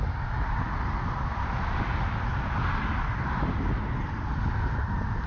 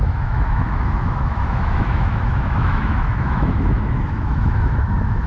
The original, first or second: first